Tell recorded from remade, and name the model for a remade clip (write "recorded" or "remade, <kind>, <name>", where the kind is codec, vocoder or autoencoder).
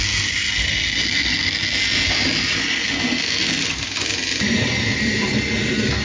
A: recorded